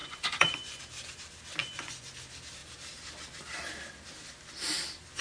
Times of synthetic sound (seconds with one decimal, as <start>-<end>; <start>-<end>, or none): 0.0-0.8; 1.6-2.1